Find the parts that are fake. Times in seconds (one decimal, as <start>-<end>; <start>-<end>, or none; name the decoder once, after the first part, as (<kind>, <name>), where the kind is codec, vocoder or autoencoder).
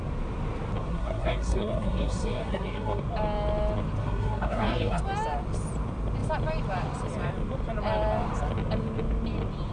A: 0.9-3.0 (codec, SNAC); 4.0-5.0